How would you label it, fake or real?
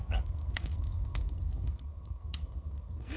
fake